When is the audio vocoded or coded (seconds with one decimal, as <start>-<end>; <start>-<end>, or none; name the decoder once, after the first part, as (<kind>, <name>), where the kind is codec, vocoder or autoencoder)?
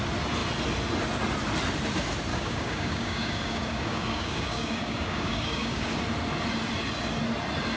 2.3-5.9 (codec, DAC)